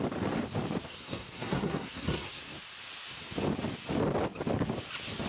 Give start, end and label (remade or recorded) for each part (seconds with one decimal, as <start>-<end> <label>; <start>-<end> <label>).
0.0-0.9 recorded; 0.9-2.4 remade; 2.4-5.3 recorded